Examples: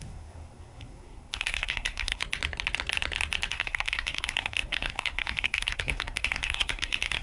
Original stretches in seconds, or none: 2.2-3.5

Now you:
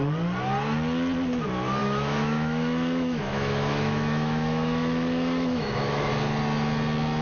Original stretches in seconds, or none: 0.0-1.8; 6.1-7.2

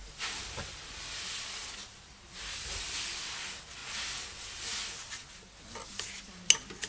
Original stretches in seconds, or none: 0.0-6.9